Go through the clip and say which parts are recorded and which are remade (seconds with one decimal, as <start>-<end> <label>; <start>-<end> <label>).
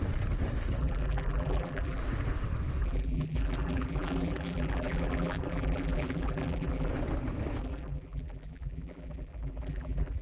0.0-0.8 recorded; 0.8-2.0 remade; 2.0-2.8 recorded; 2.8-6.9 remade; 6.9-7.6 recorded; 7.6-10.2 remade